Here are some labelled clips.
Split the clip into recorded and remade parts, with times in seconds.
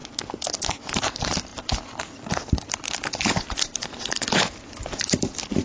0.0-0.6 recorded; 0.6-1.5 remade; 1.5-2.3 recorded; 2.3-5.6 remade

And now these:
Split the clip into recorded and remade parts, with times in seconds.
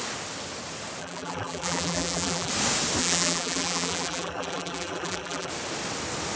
0.0-1.0 recorded; 1.0-2.5 remade; 2.5-3.0 recorded; 3.0-5.5 remade; 5.5-6.4 recorded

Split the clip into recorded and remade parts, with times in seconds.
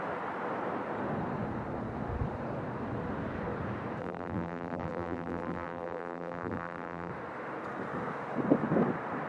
0.0-4.0 recorded; 4.0-7.1 remade; 7.1-9.3 recorded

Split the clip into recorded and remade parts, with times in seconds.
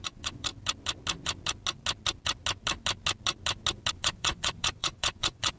0.0-0.5 remade; 0.5-3.9 recorded; 3.9-5.6 remade